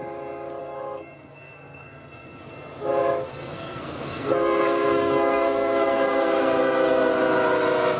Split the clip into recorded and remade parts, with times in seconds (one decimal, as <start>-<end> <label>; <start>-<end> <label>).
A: 0.0-0.6 recorded; 0.6-2.5 remade; 2.5-3.3 recorded; 3.3-7.1 remade; 7.1-8.0 recorded

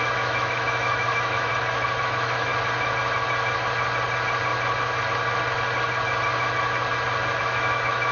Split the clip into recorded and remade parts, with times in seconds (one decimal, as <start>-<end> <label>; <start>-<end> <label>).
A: 0.0-1.5 remade; 1.5-2.0 recorded; 2.0-2.5 remade; 2.5-7.4 recorded; 7.4-8.1 remade

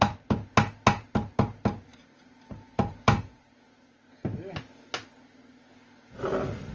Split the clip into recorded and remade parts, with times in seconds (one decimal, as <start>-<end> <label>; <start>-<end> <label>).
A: 0.0-1.9 recorded; 1.9-3.9 remade; 3.9-6.7 recorded

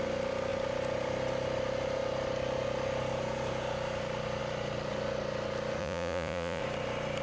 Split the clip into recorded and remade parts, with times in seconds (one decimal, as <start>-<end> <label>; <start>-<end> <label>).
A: 0.0-5.8 recorded; 5.8-6.6 remade; 6.6-7.2 recorded